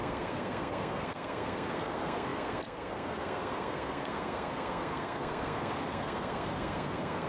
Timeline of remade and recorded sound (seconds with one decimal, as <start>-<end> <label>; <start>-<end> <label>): 0.0-7.3 remade